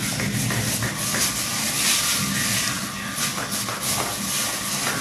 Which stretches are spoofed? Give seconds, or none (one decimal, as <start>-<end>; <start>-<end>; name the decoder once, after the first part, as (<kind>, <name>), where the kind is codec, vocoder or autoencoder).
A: none

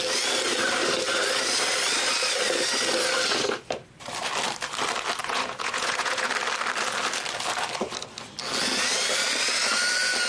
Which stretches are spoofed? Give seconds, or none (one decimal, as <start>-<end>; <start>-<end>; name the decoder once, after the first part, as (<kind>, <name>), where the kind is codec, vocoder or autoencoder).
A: 5.2-6.3 (vocoder, Vocos)

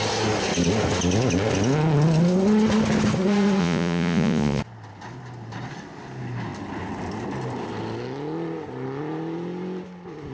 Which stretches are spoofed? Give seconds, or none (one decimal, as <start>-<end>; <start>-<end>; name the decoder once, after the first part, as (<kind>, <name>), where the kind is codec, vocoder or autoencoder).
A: 3.6-4.6 (vocoder, Vocos)

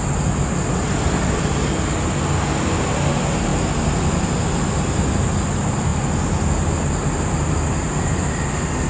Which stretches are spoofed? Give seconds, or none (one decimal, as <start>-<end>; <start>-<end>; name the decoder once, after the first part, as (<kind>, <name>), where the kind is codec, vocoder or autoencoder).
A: none

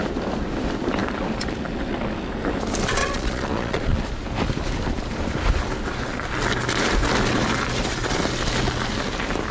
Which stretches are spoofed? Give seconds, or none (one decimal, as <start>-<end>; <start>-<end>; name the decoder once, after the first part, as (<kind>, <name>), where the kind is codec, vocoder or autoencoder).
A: 3.0-4.0 (vocoder, Vocos)

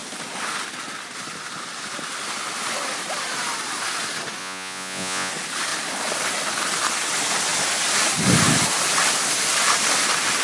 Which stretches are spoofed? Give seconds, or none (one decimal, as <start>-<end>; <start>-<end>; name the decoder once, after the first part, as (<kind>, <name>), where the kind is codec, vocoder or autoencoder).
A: 4.4-5.3 (vocoder, Vocos)

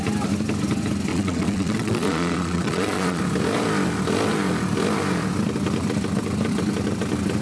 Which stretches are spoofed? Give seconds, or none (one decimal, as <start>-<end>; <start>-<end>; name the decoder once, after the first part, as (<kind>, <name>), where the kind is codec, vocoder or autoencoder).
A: 1.1-3.2 (vocoder, Vocos)